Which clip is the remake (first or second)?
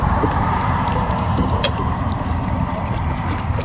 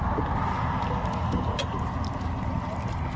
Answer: first